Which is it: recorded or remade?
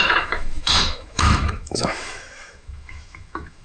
remade